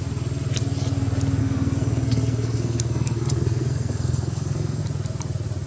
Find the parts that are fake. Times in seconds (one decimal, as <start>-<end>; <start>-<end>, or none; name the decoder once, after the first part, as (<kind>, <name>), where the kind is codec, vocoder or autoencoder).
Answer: 1.4-4.8 (codec, SNAC)